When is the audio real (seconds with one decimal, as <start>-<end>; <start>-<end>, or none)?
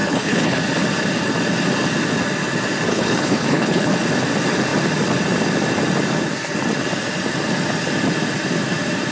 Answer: 0.6-2.9; 3.9-9.1